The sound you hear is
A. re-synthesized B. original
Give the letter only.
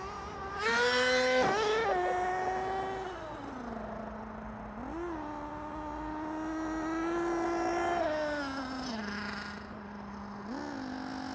B